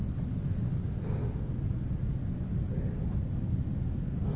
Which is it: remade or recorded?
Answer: recorded